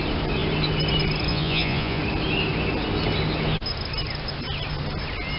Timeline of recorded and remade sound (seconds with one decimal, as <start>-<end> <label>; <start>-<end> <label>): 0.0-1.3 recorded; 1.3-2.0 remade; 2.0-5.4 recorded